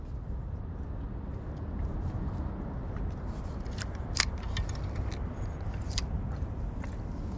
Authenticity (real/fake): real